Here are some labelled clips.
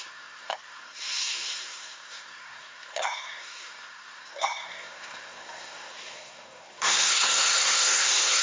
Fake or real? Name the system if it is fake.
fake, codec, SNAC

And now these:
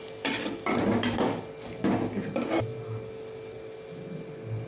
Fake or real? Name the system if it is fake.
real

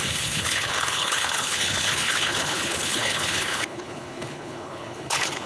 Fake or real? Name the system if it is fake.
fake, codec, HILCodec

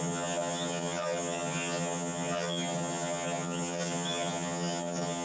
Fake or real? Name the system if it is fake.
fake, vocoder, HiFi-GAN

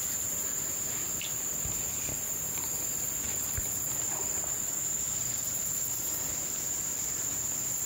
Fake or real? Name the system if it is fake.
fake, vocoder, BigVGAN v2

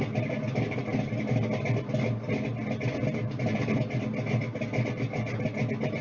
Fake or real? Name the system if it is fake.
real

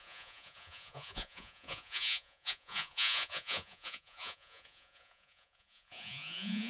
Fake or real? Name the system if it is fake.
fake, vocoder, Vocos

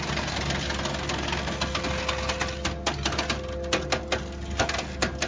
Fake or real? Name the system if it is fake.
real